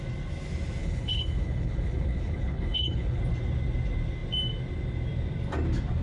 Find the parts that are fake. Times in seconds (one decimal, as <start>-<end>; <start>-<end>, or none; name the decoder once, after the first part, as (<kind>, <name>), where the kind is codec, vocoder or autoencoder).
0.8-3.2 (codec, HILCodec)

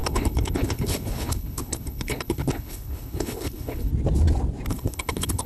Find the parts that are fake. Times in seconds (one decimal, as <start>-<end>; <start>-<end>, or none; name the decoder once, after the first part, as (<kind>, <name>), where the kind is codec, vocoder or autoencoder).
0.0-3.9 (codec, HILCodec); 4.7-5.5

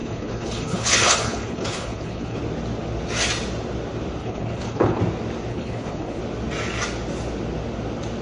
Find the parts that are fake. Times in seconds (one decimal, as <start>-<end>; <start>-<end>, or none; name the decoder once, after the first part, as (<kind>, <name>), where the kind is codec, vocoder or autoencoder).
0.0-2.4 (codec, HILCodec); 4.2-5.0; 5.5-6.2

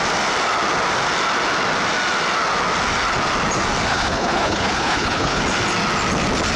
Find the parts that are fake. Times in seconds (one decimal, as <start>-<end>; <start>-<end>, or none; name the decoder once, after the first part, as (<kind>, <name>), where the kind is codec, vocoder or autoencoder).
3.9-5.4 (codec, HILCodec)

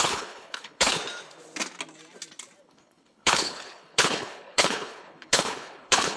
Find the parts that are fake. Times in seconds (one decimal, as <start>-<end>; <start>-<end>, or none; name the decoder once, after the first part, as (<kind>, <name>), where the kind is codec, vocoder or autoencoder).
0.0-1.0 (codec, HILCodec); 2.6-6.2

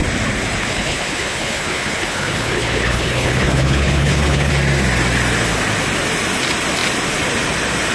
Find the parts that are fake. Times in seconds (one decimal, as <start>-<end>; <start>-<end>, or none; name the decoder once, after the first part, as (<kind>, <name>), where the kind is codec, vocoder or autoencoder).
0.6-4.5 (codec, HILCodec)

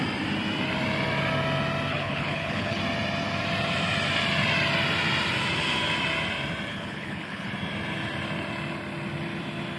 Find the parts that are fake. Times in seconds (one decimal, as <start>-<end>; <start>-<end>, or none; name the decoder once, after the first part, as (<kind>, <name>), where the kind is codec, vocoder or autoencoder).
1.9-2.8 (codec, HILCodec); 6.7-7.5